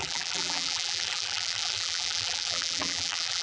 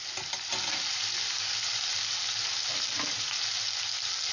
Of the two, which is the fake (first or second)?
first